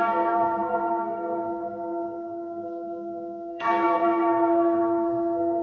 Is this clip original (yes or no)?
no